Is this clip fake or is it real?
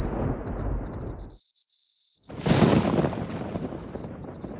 real